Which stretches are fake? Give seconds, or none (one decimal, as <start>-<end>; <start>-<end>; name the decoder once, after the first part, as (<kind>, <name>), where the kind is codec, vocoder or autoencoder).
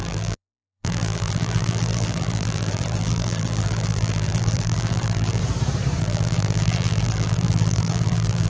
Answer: 0.0-5.4 (vocoder, BigVGAN v2); 6.0-8.5